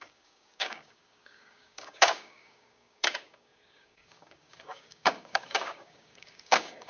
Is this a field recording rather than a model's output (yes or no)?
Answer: no